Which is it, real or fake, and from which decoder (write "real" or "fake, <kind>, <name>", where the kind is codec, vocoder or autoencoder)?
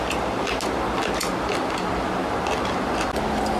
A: real